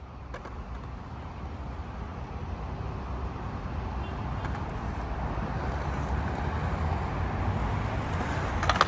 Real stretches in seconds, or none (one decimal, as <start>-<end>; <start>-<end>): 0.0-8.9